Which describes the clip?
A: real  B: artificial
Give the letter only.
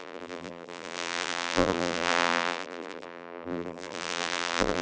B